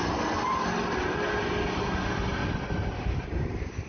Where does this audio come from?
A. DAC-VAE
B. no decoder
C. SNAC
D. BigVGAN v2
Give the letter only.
B